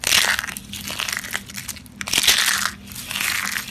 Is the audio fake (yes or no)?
no